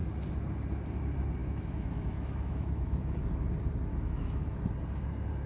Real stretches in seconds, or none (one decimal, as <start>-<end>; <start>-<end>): 0.0-1.4; 3.2-3.9; 4.6-5.5